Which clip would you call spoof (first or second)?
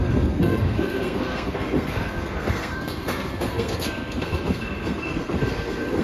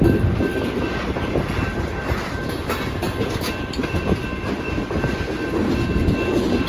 first